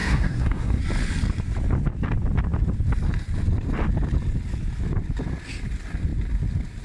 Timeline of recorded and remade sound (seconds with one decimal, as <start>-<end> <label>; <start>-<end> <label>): 0.0-0.8 remade; 0.8-6.8 recorded